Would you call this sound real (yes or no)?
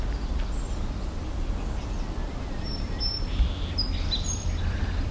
yes